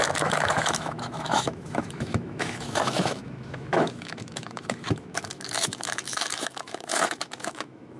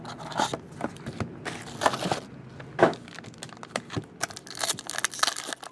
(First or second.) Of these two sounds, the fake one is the first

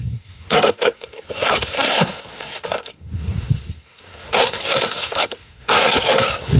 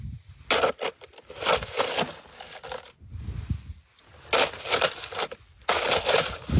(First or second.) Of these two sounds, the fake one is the first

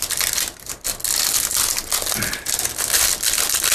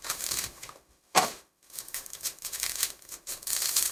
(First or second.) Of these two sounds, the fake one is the second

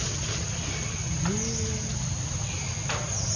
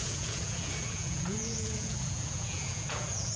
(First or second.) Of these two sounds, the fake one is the second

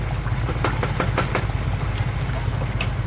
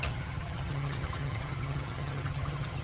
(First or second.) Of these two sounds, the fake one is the second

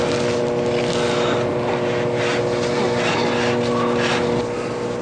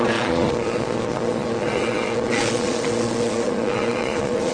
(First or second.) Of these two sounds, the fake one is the second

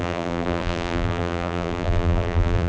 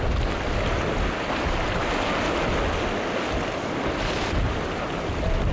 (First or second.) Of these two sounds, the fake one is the first